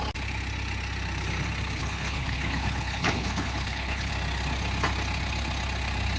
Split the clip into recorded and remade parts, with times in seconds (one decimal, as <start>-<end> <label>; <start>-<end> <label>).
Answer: 0.0-1.8 recorded; 1.8-4.1 remade; 4.1-6.2 recorded